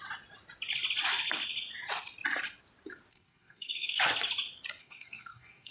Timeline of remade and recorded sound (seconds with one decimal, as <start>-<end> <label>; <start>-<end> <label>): 0.0-3.1 recorded; 3.1-4.0 remade; 4.0-4.8 recorded; 4.8-5.7 remade